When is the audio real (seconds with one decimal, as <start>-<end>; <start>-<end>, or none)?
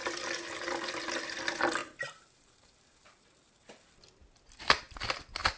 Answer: 0.0-1.8; 3.7-5.6